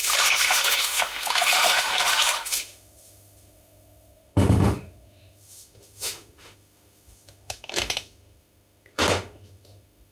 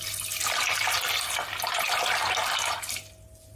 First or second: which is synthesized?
first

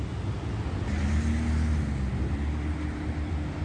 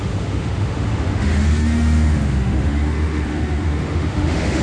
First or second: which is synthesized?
second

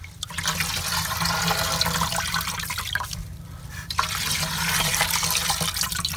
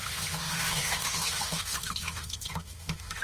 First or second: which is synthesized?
second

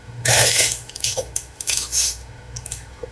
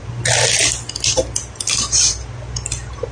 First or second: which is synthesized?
first